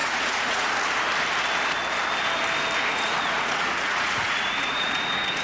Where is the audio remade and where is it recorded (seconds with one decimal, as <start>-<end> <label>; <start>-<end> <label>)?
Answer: 0.0-0.7 remade; 0.7-2.9 recorded; 2.9-5.4 remade